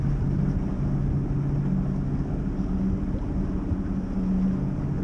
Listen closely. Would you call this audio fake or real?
real